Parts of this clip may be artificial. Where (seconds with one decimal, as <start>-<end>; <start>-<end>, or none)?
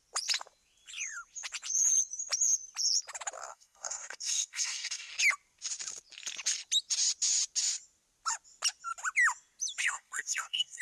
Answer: 3.5-5.1; 9.8-10.8